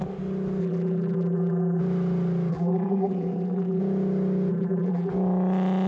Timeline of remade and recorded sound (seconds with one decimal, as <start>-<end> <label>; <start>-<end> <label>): 0.0-0.6 recorded; 0.6-1.8 remade; 1.8-2.5 recorded; 2.5-3.8 remade; 3.8-4.5 recorded; 4.5-5.1 remade; 5.1-5.9 recorded